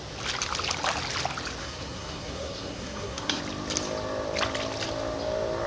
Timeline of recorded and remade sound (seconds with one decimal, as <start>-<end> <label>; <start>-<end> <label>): 0.0-1.6 recorded; 1.6-3.4 remade; 3.4-5.7 recorded